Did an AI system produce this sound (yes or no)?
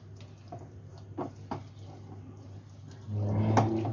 no